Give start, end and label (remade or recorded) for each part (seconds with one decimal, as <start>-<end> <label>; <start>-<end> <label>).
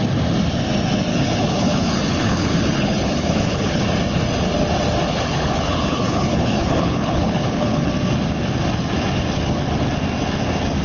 0.0-1.1 recorded; 1.1-3.8 remade; 3.8-5.1 recorded; 5.1-7.9 remade; 7.9-10.8 recorded